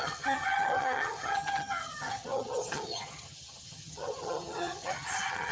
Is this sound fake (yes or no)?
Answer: yes